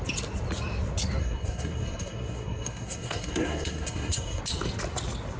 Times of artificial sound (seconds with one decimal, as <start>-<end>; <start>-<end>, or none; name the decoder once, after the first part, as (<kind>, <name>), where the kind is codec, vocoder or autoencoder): 1.2-4.4 (codec, SNAC)

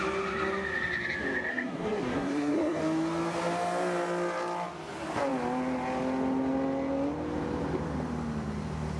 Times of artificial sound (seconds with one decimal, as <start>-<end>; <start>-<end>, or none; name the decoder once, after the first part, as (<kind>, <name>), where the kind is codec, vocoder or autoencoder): 1.5-2.8 (codec, SNAC)